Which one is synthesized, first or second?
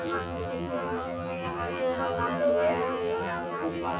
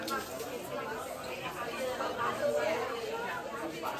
first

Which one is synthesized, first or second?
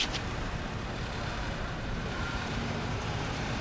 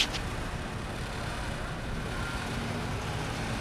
first